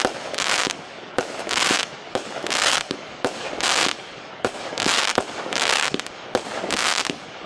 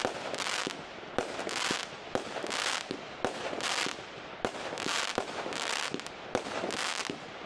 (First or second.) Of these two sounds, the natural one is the second